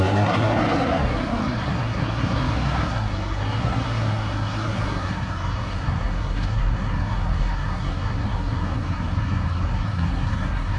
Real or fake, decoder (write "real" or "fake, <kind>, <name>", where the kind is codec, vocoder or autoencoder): fake, codec, SNAC